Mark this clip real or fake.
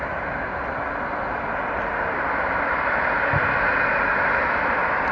real